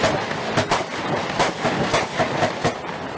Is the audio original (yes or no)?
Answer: yes